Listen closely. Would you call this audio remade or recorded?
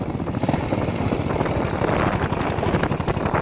recorded